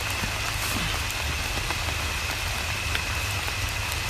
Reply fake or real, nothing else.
real